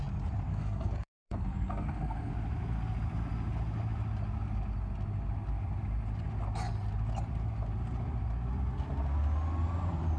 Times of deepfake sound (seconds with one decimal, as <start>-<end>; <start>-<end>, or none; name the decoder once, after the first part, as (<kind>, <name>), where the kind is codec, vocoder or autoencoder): 0.5-2.3 (codec, SNAC)